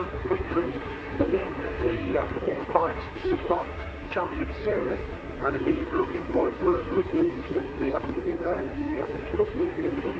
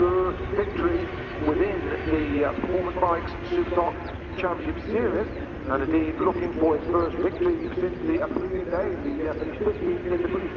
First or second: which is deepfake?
first